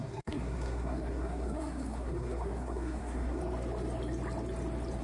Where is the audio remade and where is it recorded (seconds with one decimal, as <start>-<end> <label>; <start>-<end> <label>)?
0.0-3.4 remade; 3.4-5.0 recorded